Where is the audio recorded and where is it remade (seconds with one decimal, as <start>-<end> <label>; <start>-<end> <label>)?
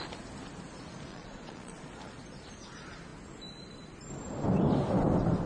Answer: 0.0-1.1 recorded; 1.1-1.8 remade; 1.8-5.5 recorded